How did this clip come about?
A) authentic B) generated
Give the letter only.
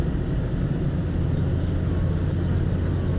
A